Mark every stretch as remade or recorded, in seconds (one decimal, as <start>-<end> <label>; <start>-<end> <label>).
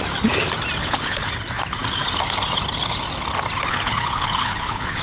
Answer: 0.0-0.8 recorded; 0.8-1.3 remade; 1.3-3.7 recorded; 3.7-5.0 remade